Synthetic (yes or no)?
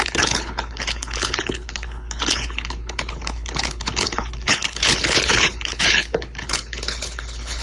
yes